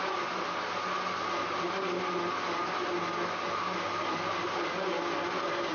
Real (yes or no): yes